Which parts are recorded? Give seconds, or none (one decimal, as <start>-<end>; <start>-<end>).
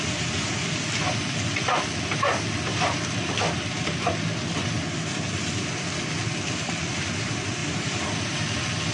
0.0-8.9